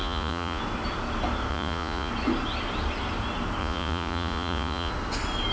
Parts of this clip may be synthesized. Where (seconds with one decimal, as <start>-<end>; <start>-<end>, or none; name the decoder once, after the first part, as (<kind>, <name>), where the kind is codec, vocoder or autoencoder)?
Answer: 0.0-0.6 (vocoder, Vocos); 1.5-2.1; 3.6-4.9